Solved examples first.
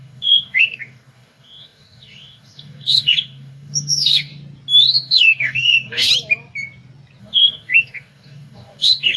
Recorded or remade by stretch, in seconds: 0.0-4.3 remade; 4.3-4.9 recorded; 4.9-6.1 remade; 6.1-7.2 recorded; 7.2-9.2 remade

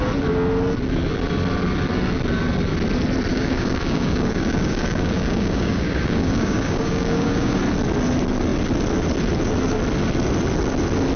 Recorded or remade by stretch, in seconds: 0.0-3.3 recorded; 3.3-7.6 remade; 7.6-11.2 recorded

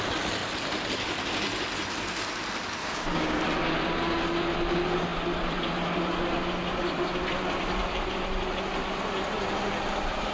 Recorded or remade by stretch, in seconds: 0.0-2.8 recorded; 2.8-3.4 remade; 3.4-10.3 recorded